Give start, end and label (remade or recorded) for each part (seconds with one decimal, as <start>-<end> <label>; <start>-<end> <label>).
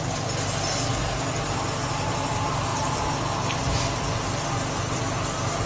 0.0-5.7 recorded